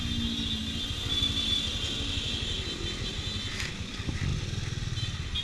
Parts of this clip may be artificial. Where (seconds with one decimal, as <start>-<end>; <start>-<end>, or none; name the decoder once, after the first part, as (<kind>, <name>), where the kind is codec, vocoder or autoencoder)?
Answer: none